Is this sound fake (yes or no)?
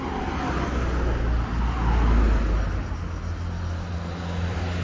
no